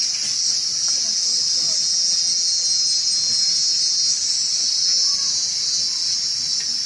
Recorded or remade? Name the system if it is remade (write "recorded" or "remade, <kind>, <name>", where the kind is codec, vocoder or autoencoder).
recorded